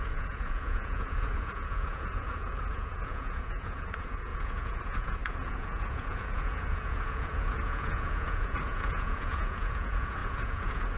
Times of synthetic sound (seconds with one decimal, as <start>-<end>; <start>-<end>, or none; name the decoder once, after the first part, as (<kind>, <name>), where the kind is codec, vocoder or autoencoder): 0.0-11.0 (vocoder, Vocos)